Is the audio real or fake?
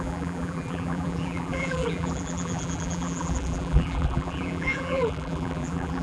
fake